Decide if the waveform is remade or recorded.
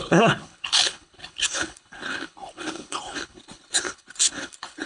remade